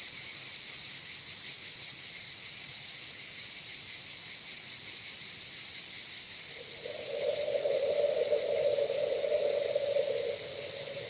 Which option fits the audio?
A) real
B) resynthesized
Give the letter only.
A